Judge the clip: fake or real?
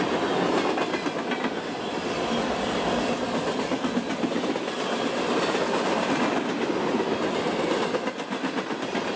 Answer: real